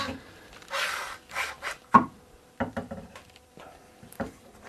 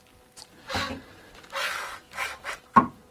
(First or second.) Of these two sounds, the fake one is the first